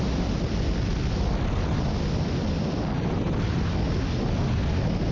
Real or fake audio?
real